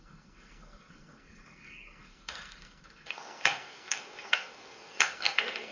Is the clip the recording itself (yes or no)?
no